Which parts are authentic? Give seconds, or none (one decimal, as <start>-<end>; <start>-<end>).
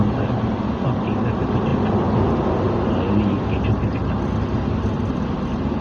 0.0-5.8